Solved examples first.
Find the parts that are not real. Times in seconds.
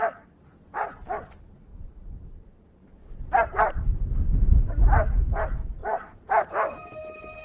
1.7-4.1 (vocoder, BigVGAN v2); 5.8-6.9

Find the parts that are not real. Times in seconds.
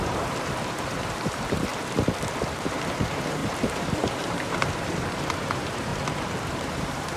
0.0-1.7 (vocoder, BigVGAN v2); 2.6-5.9; 6.5-7.2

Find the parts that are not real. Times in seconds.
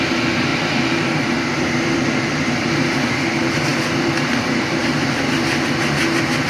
0.5-3.1 (vocoder, BigVGAN v2); 3.7-4.8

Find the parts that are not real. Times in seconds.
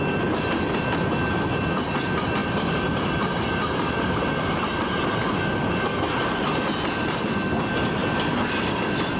2.4-5.4 (vocoder, BigVGAN v2)